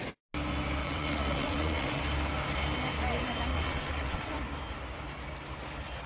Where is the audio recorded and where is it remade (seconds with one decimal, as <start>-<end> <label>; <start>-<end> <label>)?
0.0-0.8 recorded; 0.8-2.0 remade; 2.0-3.5 recorded; 3.5-4.3 remade; 4.3-6.1 recorded